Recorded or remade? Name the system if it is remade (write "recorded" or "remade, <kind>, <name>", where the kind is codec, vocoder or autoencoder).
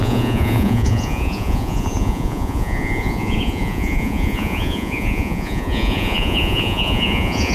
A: remade, vocoder, Vocos